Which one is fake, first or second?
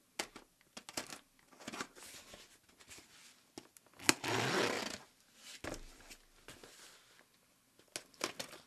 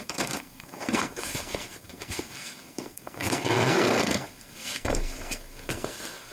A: second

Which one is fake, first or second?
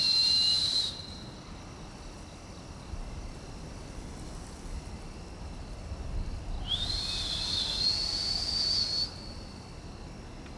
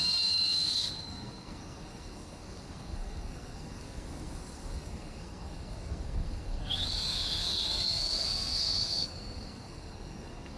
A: second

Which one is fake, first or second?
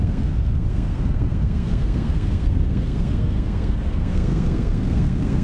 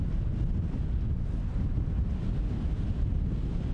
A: first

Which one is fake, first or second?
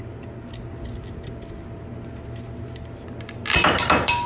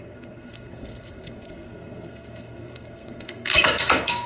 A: second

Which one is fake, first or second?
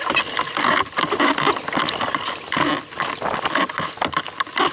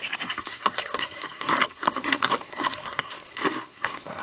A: second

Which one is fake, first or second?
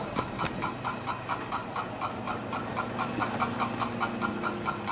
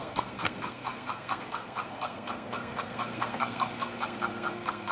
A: second